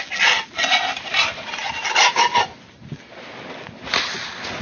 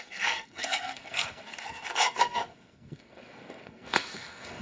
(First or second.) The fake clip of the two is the second